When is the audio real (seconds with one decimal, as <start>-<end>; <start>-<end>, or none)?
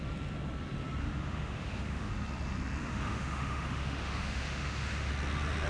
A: 0.0-1.0; 2.1-2.8; 5.1-5.7